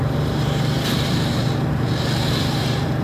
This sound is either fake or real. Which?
fake